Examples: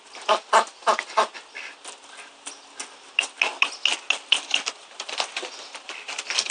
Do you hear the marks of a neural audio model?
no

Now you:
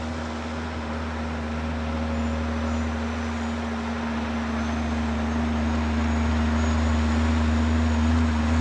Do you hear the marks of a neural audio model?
no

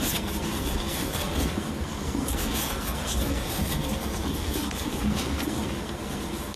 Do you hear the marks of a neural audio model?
yes